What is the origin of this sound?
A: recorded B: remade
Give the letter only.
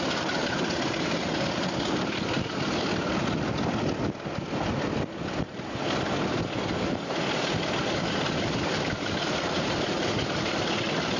A